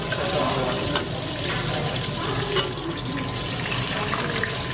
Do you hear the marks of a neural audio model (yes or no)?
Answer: no